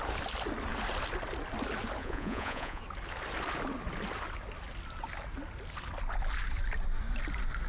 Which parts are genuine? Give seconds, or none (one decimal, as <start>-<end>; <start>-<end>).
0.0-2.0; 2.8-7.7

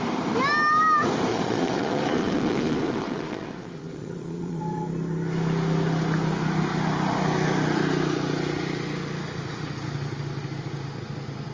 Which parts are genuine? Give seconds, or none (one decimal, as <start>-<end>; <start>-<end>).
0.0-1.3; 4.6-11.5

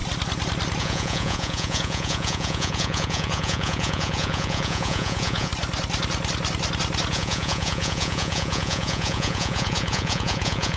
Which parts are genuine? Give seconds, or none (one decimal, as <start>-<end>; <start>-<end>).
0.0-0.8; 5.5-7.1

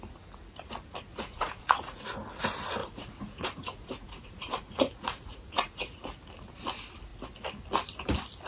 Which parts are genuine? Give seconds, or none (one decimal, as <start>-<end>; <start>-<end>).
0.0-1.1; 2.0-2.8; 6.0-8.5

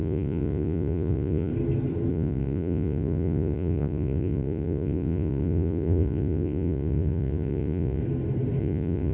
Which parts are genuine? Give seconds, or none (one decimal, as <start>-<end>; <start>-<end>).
1.5-2.1; 8.0-8.6

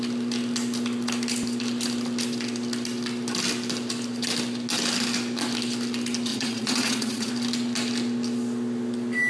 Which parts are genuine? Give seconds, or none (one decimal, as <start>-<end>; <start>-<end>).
0.0-6.3; 7.3-9.3

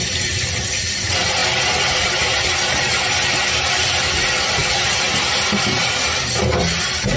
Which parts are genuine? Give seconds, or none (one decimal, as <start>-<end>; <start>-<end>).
0.0-7.2